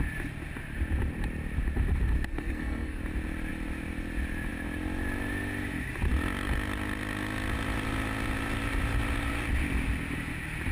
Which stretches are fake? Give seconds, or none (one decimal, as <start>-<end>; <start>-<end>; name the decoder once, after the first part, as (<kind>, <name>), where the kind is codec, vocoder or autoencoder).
2.3-3.0 (codec, SNAC)